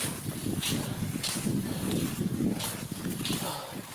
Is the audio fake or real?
real